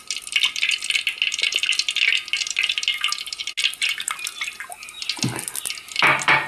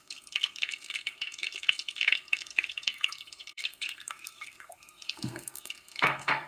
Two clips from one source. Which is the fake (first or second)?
second